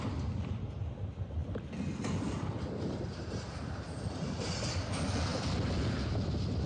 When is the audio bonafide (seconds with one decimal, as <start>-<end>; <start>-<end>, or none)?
0.0-6.7